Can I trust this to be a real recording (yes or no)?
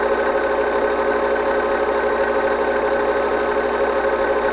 yes